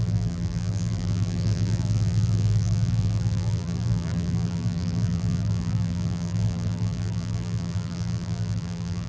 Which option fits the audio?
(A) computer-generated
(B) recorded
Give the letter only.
A